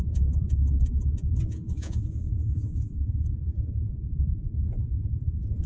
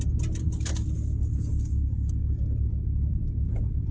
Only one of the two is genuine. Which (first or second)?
second